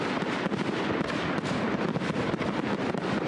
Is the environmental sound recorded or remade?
recorded